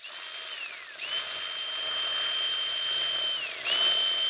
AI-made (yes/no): no